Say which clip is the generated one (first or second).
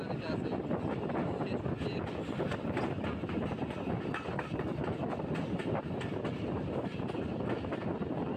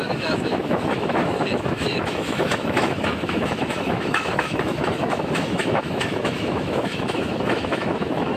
second